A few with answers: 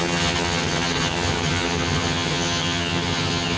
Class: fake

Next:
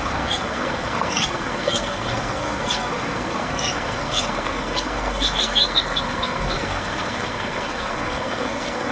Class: fake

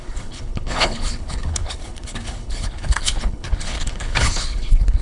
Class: fake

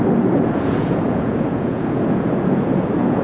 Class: fake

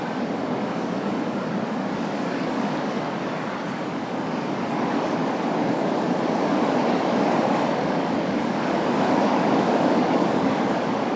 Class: fake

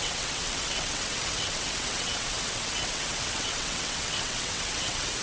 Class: fake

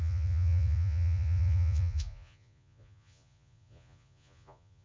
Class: fake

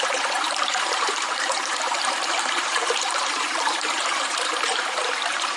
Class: fake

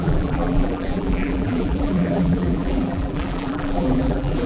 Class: fake